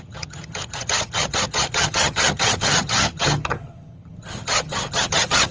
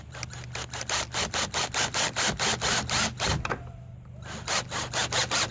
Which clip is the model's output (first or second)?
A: first